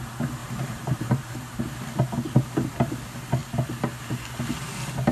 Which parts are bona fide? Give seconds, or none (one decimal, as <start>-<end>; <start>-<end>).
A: 0.0-0.4; 1.6-5.1